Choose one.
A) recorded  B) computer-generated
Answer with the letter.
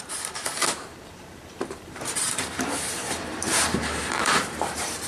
B